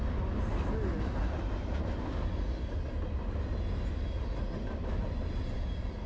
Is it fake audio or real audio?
real